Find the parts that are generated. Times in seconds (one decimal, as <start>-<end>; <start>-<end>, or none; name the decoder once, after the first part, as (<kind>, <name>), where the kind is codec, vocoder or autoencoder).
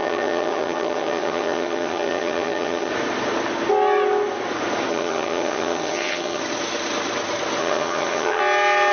0.0-2.9 (vocoder, HiFi-GAN); 4.9-6.4; 7.6-8.4